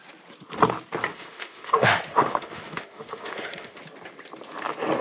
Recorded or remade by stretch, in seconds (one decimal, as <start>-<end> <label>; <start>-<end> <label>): 0.0-1.1 recorded; 1.1-3.8 remade; 3.8-5.0 recorded

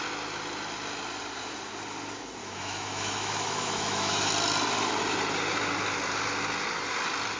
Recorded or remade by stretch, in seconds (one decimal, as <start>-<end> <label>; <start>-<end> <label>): 0.0-2.4 recorded; 2.4-4.3 remade; 4.3-7.4 recorded

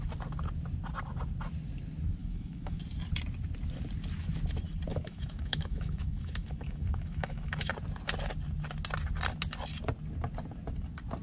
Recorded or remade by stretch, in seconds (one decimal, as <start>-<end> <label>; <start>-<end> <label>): 0.0-2.2 recorded; 2.2-2.8 remade; 2.8-4.9 recorded; 4.9-7.7 remade; 7.7-11.2 recorded